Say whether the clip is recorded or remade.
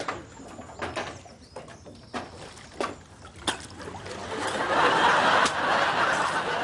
recorded